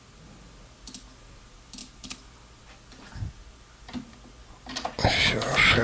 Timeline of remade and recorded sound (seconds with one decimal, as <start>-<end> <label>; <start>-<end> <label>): 0.0-5.8 recorded